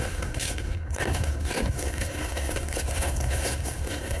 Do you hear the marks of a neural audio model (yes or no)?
yes